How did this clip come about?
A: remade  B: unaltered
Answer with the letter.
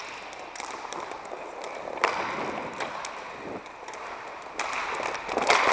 B